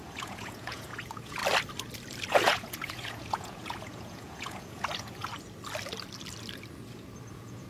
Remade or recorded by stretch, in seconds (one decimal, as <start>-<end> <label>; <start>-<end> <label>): 0.0-1.4 remade; 1.4-2.3 recorded; 2.3-5.3 remade; 5.3-7.3 recorded; 7.3-7.7 remade